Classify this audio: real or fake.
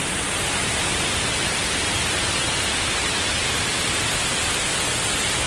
real